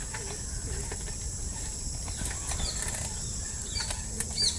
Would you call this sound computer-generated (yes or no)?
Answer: no